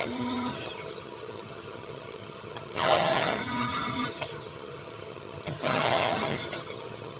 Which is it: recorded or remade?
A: remade